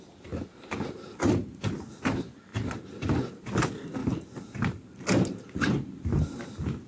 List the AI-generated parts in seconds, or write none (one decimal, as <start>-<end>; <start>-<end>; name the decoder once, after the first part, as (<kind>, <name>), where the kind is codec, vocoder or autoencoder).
none